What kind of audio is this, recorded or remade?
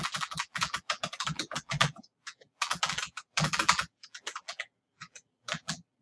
remade